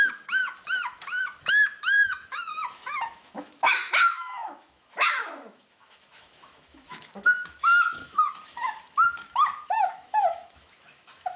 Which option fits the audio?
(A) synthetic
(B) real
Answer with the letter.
A